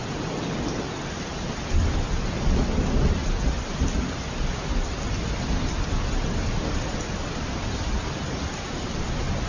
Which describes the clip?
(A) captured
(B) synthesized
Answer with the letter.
A